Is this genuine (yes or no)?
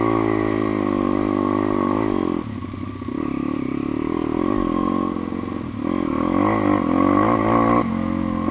yes